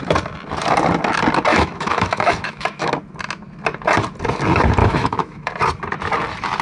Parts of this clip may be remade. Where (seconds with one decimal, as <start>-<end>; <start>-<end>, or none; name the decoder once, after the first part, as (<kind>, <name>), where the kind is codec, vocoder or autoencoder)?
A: 1.5-2.9 (autoencoder, DAC-VAE); 4.8-5.5